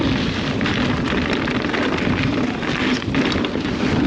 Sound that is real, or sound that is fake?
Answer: real